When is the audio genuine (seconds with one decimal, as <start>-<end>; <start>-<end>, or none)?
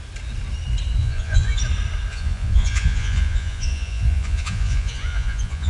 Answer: 0.0-1.0; 1.6-2.1